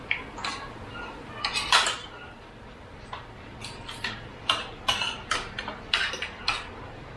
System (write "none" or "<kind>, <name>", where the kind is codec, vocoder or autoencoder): vocoder, BigVGAN v2